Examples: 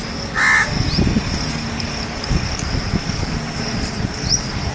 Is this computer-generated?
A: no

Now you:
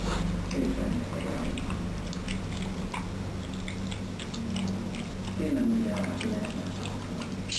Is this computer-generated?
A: no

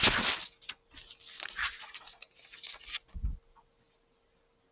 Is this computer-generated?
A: no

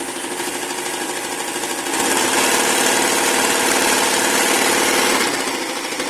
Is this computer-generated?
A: no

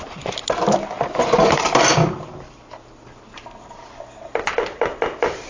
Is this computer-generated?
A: no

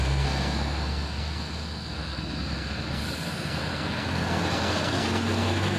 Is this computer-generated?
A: yes